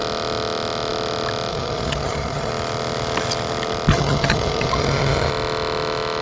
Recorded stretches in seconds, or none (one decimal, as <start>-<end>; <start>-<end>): 0.0-1.5; 2.5-3.9; 5.3-6.2